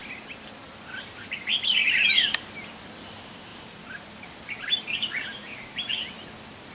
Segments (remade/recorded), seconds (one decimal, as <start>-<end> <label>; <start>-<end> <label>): 0.0-0.6 recorded; 0.6-1.3 remade; 1.3-1.8 recorded; 1.8-2.4 remade; 2.4-3.5 recorded; 3.5-6.3 remade; 6.3-6.7 recorded